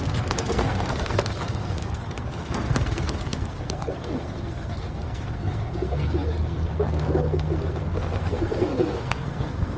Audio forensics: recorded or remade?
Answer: remade